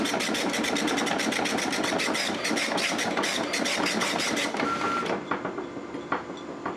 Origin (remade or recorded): recorded